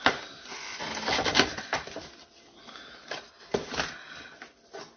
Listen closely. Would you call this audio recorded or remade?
recorded